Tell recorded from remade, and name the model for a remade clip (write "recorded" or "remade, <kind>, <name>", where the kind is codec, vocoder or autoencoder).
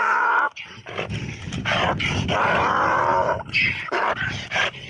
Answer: remade, vocoder, BigVGAN v2